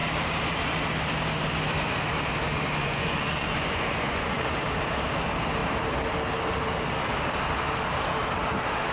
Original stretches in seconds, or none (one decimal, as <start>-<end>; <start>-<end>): 0.0-2.8; 4.5-8.9